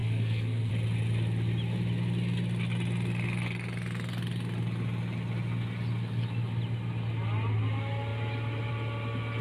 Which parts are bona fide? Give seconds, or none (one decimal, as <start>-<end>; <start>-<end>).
0.7-9.4